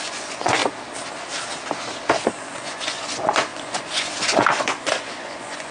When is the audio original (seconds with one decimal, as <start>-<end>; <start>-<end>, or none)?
0.6-2.3